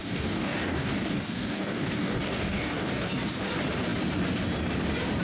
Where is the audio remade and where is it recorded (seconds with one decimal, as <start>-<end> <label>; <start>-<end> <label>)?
0.0-3.1 remade; 3.1-5.2 recorded